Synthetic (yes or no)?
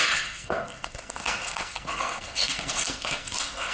yes